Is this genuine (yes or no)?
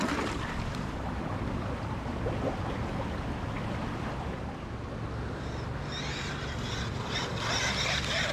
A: yes